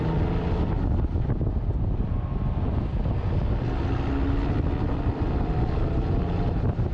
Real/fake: real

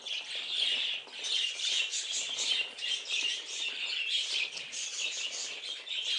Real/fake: real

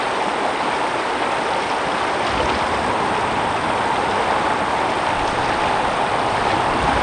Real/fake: real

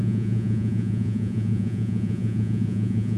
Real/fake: fake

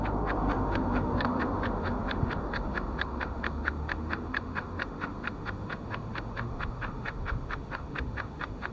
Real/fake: fake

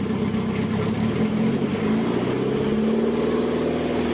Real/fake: real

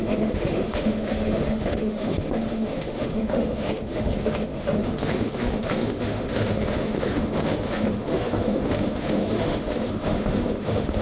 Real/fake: fake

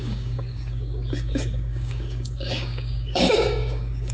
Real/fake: fake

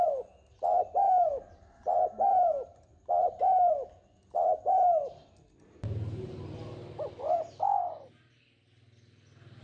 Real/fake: real